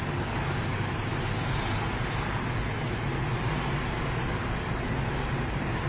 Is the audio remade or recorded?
recorded